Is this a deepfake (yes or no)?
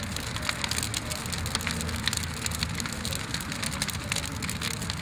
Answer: no